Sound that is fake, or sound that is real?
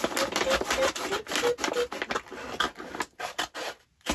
real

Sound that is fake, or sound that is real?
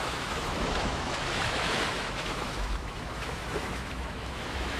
fake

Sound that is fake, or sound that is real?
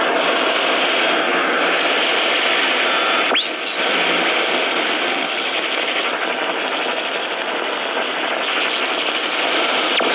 real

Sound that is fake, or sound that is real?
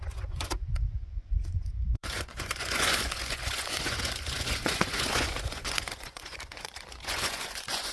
fake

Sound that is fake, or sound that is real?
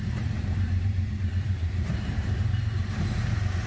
fake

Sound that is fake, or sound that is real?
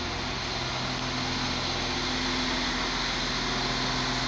real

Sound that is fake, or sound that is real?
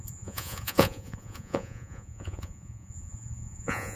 fake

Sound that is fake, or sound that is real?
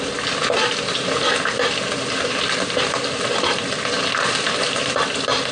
real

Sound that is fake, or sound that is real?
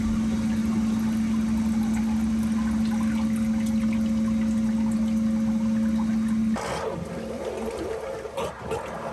real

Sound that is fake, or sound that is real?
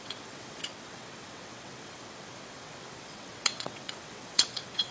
fake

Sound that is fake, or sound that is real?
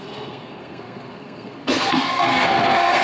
fake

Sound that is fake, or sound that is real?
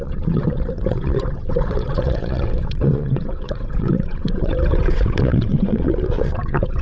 fake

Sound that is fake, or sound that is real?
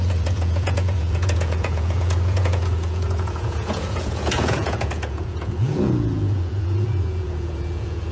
fake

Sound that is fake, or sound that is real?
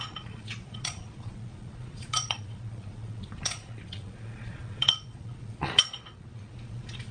fake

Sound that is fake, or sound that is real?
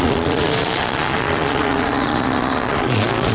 fake